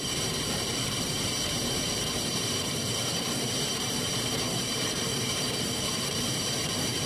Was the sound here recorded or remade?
remade